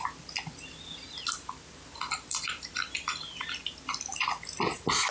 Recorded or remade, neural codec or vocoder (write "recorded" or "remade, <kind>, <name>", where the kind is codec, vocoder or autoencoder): recorded